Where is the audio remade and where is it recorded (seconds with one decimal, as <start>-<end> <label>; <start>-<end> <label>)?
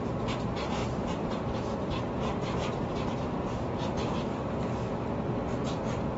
0.0-0.8 recorded; 0.8-4.5 remade; 4.5-6.2 recorded